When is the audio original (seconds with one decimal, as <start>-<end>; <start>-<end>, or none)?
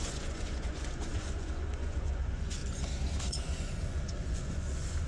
2.6-3.1